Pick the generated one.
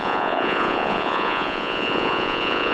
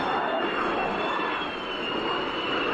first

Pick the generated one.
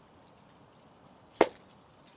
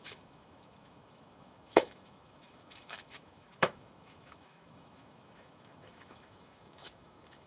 second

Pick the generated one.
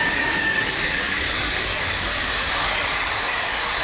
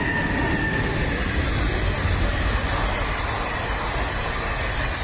first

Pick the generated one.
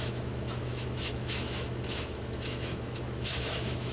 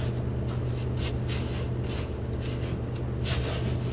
first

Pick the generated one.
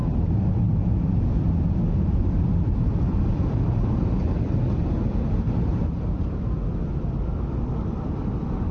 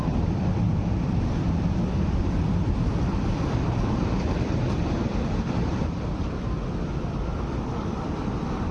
second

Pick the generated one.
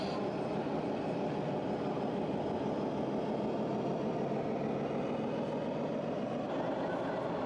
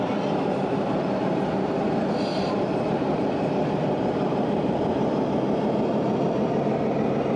second